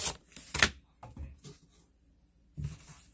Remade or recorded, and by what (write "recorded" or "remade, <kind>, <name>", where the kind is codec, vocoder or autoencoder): recorded